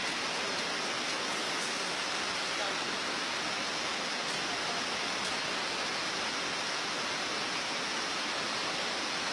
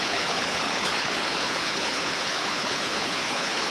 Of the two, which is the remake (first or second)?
second